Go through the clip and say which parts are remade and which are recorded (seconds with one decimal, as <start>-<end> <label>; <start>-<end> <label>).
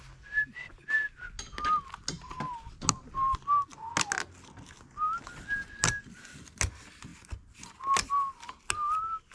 0.0-9.3 recorded